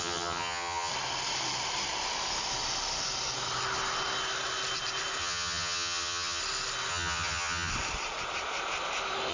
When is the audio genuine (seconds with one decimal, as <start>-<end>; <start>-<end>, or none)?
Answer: 0.9-5.2; 6.4-6.9; 7.7-9.3